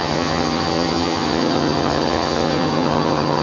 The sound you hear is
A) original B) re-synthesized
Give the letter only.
B